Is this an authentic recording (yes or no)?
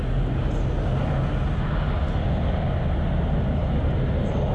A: yes